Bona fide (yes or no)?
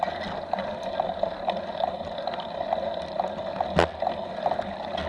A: yes